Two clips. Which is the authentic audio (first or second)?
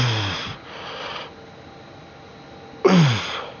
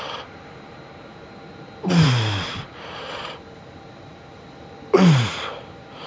first